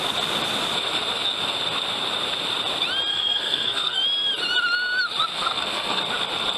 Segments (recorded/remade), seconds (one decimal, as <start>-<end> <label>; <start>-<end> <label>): 0.0-3.1 recorded; 3.1-4.0 remade; 4.0-5.3 recorded; 5.3-6.0 remade; 6.0-6.6 recorded